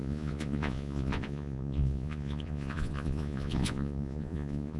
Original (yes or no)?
no